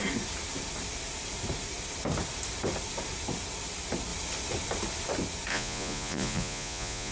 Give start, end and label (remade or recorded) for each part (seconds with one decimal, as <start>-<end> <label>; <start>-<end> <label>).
0.0-5.5 recorded; 5.5-7.1 remade